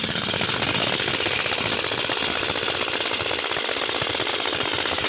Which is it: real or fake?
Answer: real